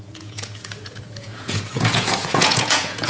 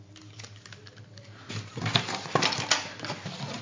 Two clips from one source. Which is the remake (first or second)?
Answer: first